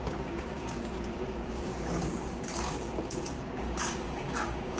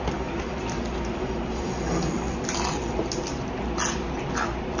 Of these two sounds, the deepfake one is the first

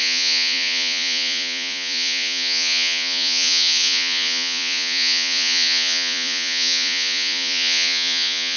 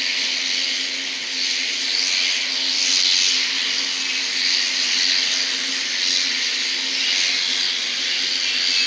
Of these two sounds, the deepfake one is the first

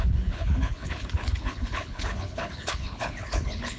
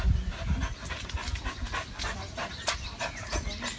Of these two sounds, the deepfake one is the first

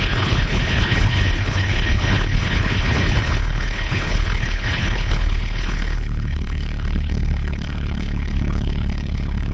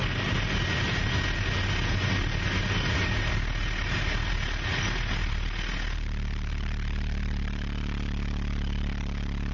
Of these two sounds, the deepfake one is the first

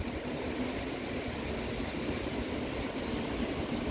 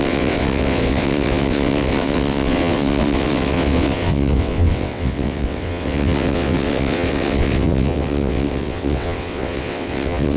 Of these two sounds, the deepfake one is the second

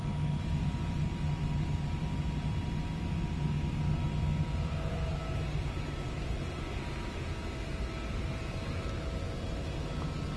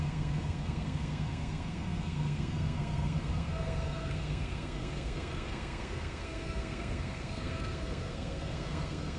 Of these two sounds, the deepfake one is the second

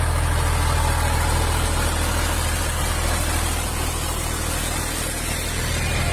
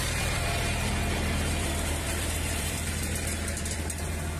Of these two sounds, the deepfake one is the second